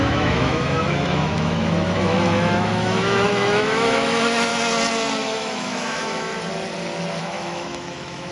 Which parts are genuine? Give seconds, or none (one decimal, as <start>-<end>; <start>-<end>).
4.5-5.2; 6.3-7.2